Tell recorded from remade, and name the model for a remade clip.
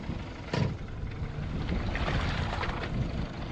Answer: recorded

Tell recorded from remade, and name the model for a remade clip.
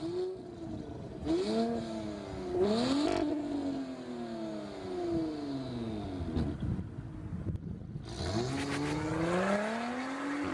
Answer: recorded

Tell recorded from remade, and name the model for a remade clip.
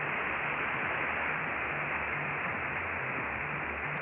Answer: recorded